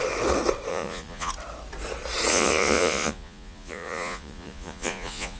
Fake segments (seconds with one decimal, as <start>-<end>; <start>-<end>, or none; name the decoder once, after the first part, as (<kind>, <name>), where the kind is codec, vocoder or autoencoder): 0.7-1.3 (vocoder, Vocos); 2.3-5.4